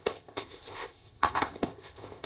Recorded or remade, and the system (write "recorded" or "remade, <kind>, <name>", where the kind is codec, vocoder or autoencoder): remade, codec, ZipCodec